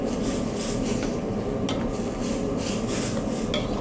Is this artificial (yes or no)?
no